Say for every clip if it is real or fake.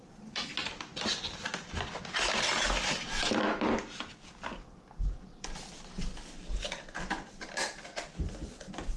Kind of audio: real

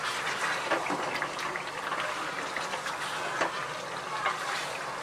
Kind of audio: real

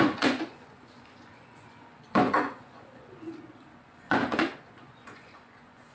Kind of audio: fake